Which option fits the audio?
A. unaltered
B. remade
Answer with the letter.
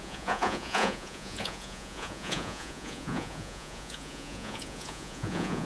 B